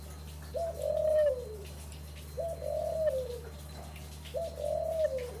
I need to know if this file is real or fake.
real